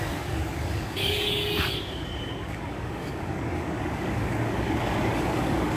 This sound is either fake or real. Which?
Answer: fake